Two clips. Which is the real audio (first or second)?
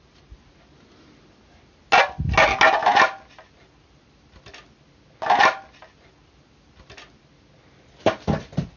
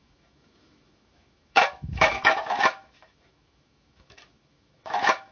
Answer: first